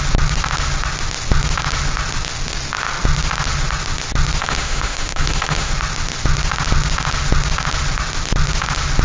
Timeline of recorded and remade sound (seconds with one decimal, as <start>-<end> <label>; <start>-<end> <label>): 0.0-4.4 recorded; 4.4-5.7 remade; 5.7-9.0 recorded